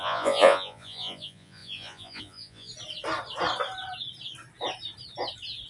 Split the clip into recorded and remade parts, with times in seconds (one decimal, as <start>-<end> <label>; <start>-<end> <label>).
0.0-2.7 remade; 2.7-5.7 recorded